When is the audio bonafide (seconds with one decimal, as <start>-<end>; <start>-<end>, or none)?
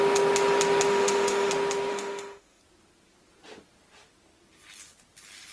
0.0-0.9; 1.5-1.9; 2.6-5.5